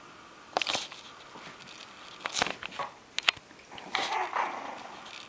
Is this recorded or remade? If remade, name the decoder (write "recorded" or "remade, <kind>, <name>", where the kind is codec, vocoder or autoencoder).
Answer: recorded